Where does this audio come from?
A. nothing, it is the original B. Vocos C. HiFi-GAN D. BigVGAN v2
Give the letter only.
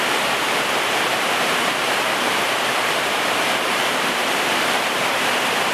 D